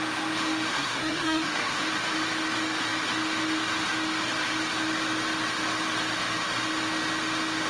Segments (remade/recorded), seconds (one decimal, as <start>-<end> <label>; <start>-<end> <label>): 0.0-0.7 recorded; 0.7-1.8 remade; 1.8-7.7 recorded